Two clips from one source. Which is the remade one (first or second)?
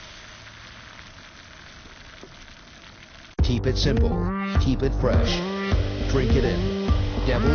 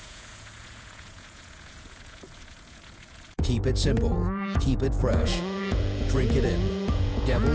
second